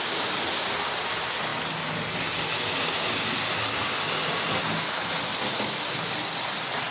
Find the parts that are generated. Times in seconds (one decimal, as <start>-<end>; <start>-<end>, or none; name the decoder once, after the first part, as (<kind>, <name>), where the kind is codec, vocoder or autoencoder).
none